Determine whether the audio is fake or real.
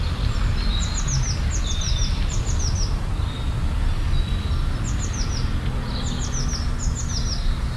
real